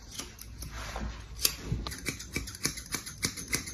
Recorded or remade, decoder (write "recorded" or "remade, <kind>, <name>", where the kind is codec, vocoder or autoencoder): recorded